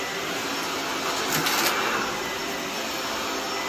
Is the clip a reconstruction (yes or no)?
no